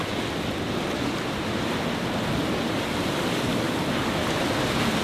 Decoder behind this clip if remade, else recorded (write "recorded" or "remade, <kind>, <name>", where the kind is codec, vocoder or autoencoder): recorded